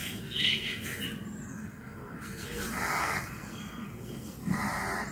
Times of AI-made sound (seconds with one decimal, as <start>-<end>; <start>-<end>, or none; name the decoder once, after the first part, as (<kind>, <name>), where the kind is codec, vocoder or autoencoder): 0.0-1.0 (codec, SNAC); 1.5-4.6